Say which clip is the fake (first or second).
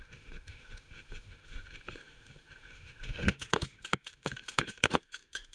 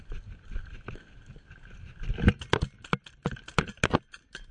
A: first